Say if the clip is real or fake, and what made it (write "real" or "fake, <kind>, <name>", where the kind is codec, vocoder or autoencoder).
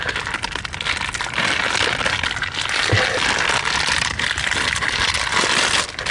real